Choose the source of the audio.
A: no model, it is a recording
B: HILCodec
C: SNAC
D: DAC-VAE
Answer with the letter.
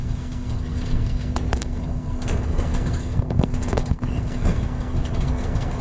C